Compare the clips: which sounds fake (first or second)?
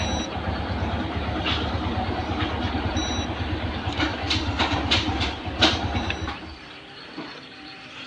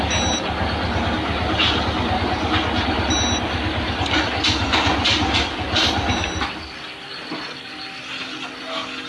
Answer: first